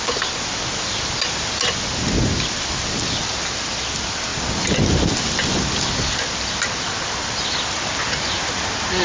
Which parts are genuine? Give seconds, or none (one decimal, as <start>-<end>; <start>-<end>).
0.0-9.0